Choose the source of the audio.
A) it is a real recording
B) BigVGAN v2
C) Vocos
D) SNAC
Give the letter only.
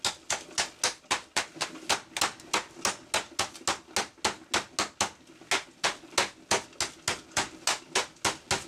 A